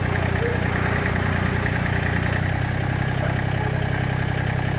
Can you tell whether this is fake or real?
real